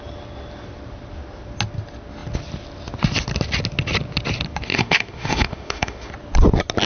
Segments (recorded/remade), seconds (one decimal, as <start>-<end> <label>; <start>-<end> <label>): 0.0-4.7 recorded; 4.7-6.1 remade; 6.1-6.9 recorded